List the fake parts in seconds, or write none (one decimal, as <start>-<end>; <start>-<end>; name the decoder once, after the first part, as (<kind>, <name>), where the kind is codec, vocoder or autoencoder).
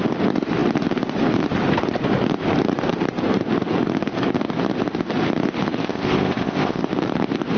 5.8-6.8 (codec, ZipCodec)